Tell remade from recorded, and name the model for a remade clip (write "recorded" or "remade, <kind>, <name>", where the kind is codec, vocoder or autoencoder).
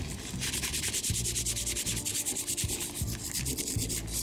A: recorded